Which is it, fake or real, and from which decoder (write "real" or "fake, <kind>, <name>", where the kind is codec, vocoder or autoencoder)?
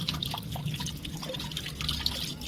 real